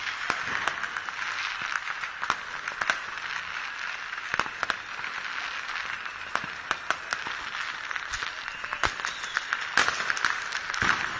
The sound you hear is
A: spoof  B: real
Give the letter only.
B